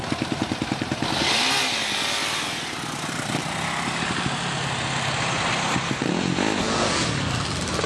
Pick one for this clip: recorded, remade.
recorded